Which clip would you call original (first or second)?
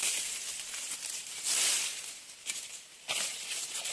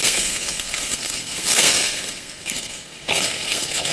first